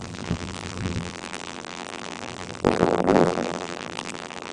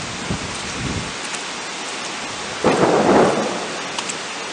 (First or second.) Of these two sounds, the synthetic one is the first